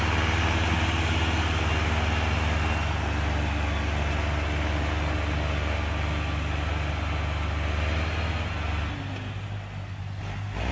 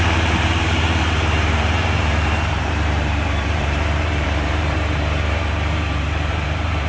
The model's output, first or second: second